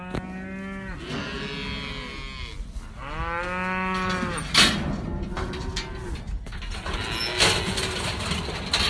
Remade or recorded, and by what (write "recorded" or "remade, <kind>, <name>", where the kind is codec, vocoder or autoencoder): recorded